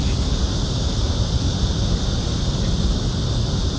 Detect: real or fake real